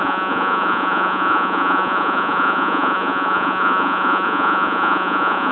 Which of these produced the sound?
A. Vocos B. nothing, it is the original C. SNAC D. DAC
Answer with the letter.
A